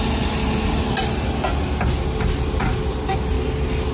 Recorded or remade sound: recorded